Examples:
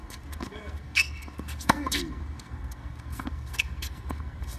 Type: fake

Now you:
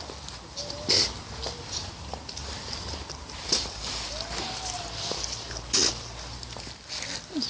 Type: real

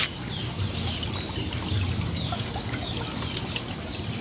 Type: real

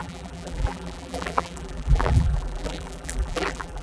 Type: fake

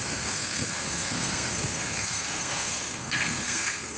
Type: fake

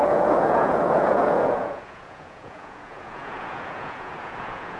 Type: fake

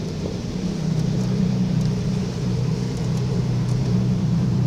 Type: fake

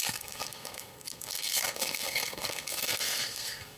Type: fake